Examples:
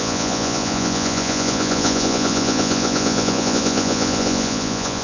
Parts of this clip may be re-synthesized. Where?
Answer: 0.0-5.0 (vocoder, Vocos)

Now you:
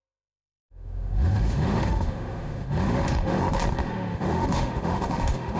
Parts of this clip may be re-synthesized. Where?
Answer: 0.0-3.4 (autoencoder, DAC-VAE); 3.8-5.6

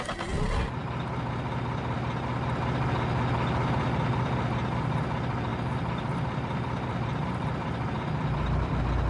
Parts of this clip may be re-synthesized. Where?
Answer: 5.5-8.7 (vocoder, BigVGAN v2)

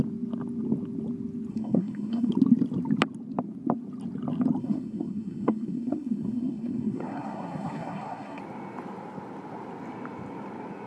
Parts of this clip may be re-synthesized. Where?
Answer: 1.5-2.3 (codec, SNAC); 4.6-8.4

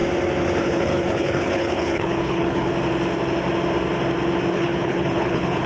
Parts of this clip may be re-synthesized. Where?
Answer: 0.6-2.7 (codec, HILCodec); 4.5-5.7

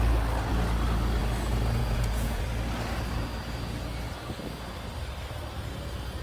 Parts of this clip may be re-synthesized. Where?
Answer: 1.8-2.4 (vocoder, Vocos)

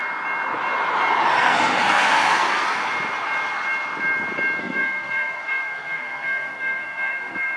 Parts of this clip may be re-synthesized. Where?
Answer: 1.4-2.8 (codec, SNAC); 4.6-7.6

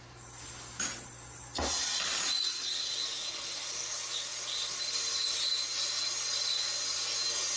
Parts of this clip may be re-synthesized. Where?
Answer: none